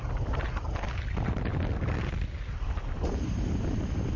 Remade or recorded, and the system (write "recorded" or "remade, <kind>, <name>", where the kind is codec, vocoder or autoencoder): recorded